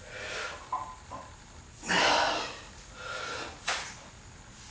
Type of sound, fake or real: real